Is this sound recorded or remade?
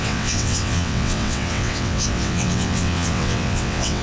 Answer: remade